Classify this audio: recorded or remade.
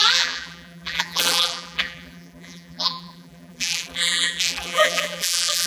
remade